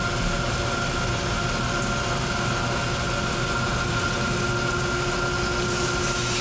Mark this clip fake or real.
real